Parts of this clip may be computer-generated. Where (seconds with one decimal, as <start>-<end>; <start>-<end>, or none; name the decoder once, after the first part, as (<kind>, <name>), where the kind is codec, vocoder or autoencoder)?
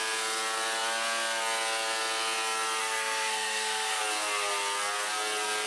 2.8-4.0 (codec, SNAC)